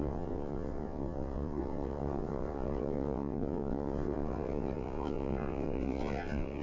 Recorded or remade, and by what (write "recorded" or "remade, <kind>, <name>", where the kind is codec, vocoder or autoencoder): remade, vocoder, WaveNeXt